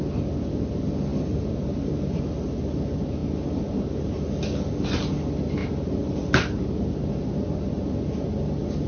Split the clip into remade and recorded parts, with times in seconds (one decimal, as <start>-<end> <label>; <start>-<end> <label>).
0.0-1.1 recorded; 1.1-2.2 remade; 2.2-3.2 recorded; 3.2-4.1 remade; 4.1-5.6 recorded; 5.6-6.8 remade; 6.8-8.9 recorded